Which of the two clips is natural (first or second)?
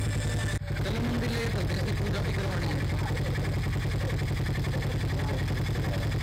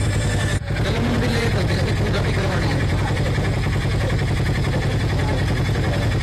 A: first